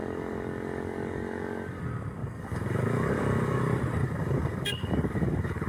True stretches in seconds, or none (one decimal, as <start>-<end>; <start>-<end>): 1.8-2.2; 3.6-4.0